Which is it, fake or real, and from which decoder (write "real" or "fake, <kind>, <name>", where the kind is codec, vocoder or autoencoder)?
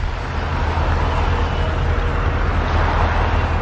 real